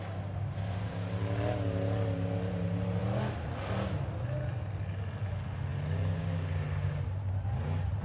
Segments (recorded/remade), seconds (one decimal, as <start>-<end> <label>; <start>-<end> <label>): 0.0-8.0 recorded